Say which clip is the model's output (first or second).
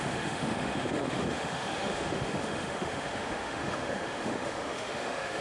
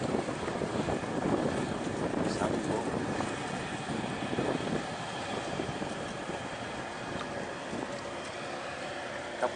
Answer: first